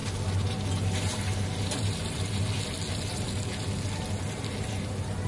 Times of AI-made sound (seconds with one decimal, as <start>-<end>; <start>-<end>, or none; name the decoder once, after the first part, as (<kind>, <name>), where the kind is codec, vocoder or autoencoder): none